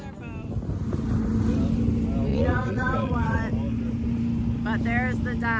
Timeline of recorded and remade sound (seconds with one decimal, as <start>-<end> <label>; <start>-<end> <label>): 0.0-2.3 recorded; 2.3-3.4 remade; 3.4-5.6 recorded